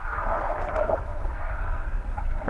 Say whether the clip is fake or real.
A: fake